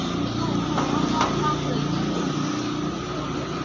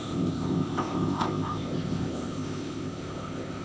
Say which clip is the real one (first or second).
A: first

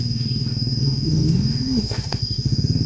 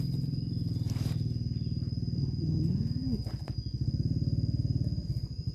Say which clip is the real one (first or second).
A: second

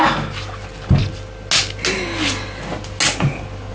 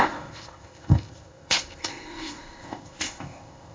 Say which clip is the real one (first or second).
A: first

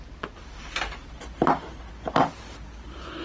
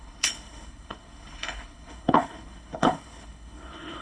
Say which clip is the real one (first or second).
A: first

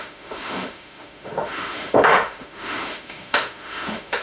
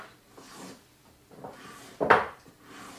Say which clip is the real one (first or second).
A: second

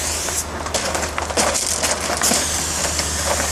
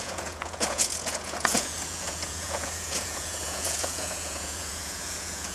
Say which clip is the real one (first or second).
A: first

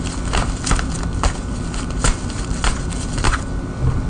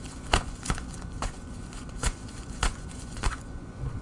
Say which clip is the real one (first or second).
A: first